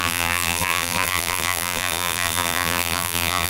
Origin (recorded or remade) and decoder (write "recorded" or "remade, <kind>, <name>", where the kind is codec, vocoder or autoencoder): remade, vocoder, BigVGAN v2